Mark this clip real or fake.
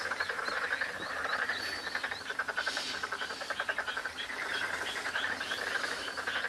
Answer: fake